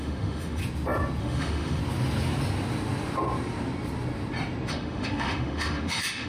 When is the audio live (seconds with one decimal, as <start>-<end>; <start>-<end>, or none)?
0.6-1.2; 1.8-4.7